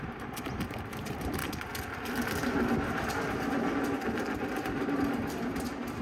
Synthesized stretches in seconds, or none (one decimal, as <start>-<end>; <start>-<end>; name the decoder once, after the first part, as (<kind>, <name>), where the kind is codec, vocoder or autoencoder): 0.0-1.4 (vocoder, BigVGAN v2); 1.9-2.4; 4.6-6.0